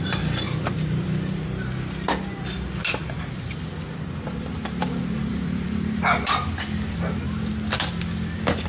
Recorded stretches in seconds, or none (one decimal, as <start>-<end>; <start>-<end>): 0.0-5.3; 6.0-8.7